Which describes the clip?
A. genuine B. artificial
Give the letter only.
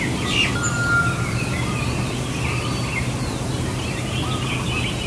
A